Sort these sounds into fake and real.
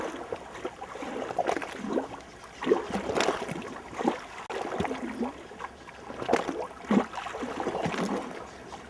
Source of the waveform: real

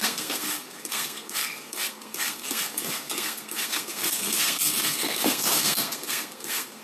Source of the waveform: fake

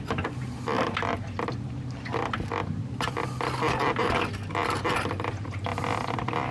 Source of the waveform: real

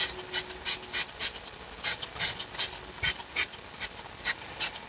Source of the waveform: real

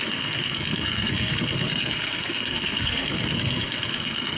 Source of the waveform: fake